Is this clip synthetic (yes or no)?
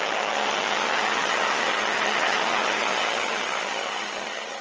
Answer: yes